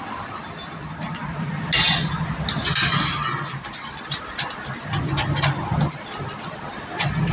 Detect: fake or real real